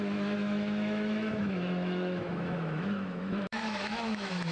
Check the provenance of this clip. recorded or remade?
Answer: remade